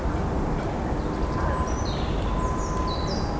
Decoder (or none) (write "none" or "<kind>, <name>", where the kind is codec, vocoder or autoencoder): none